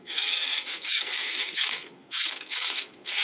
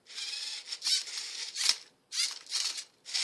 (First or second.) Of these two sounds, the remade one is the first